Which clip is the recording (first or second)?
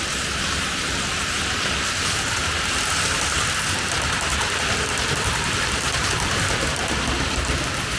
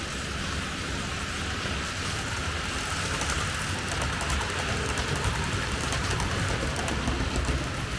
second